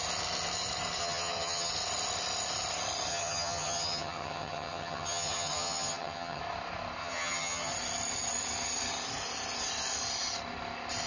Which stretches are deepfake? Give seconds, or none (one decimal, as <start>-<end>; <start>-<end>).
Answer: 1.0-1.7; 3.1-6.4; 7.0-7.7